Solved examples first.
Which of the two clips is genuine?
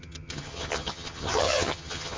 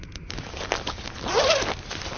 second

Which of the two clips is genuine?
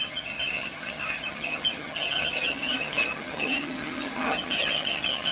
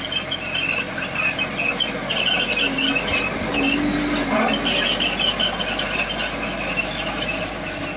second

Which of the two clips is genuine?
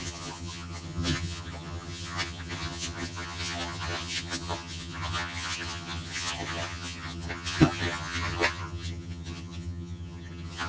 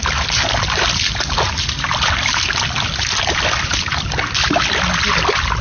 second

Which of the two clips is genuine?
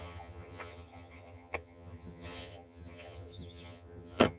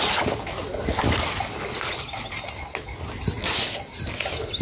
second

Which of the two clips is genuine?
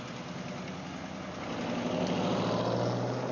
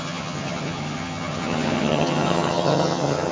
first